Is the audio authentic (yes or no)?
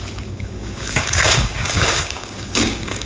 no